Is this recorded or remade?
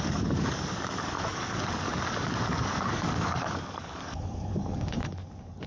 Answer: remade